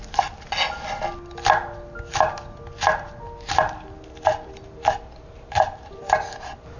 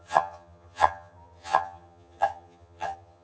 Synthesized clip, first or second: second